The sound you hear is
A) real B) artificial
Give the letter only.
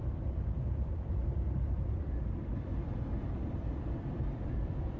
B